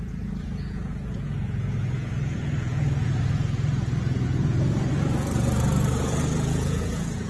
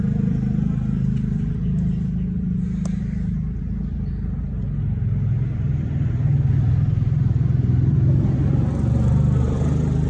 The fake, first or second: first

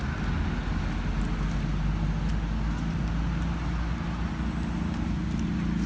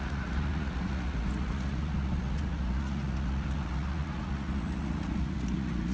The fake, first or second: second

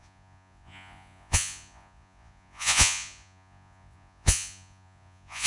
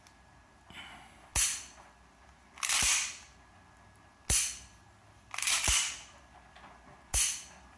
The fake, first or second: first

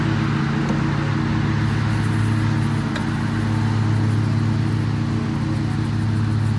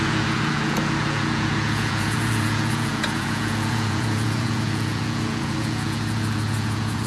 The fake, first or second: second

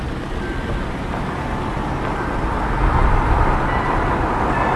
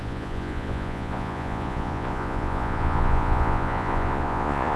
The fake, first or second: second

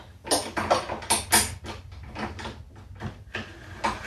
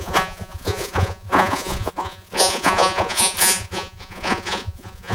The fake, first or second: second